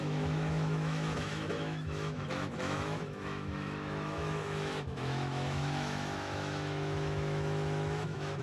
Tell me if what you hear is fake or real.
fake